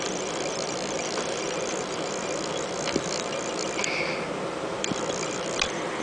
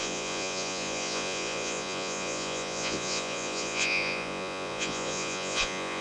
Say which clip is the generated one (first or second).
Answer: second